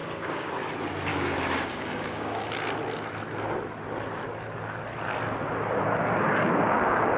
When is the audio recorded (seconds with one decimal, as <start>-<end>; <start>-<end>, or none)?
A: 0.5-1.1; 2.5-7.2